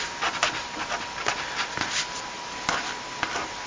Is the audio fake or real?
real